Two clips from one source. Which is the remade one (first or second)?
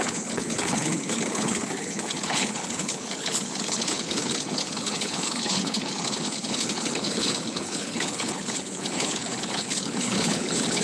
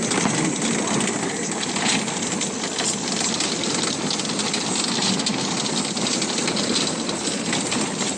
first